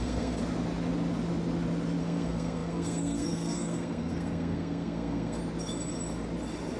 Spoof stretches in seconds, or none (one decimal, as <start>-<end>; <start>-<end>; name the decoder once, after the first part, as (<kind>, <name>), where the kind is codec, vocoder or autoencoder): 0.0-0.4 (codec, SNAC); 2.0-5.4